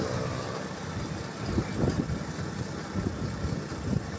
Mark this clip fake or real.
real